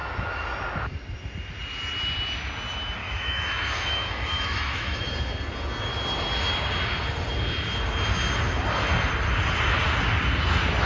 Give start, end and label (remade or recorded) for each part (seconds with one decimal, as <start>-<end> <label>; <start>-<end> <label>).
0.0-3.0 recorded; 3.0-5.1 remade; 5.1-10.9 recorded